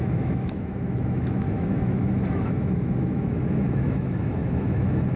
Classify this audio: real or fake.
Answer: fake